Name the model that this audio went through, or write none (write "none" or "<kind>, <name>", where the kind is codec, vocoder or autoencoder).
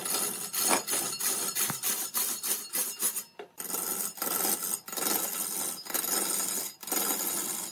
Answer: none